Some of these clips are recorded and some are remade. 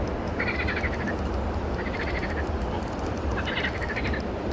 recorded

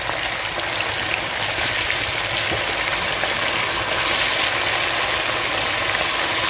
recorded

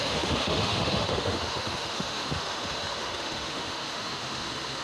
remade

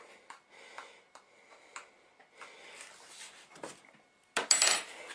recorded